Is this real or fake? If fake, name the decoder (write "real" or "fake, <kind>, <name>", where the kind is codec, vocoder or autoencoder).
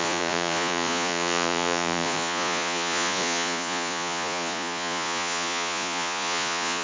fake, vocoder, Vocos